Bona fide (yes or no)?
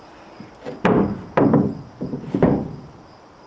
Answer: yes